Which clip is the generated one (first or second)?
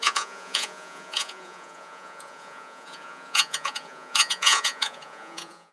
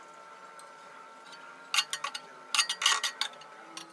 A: first